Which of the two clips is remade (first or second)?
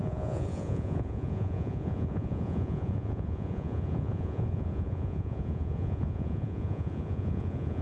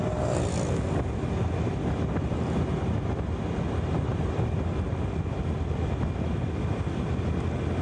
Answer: first